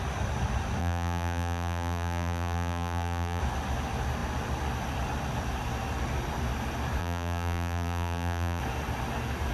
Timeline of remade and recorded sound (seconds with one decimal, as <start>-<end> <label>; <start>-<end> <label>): 0.0-0.8 recorded; 0.8-3.4 remade; 3.4-7.0 recorded; 7.0-8.6 remade; 8.6-9.5 recorded